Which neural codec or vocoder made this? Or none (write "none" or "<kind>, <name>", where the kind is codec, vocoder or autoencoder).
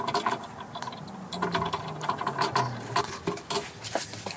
none